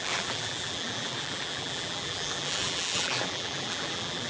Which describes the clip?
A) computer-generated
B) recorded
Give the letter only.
A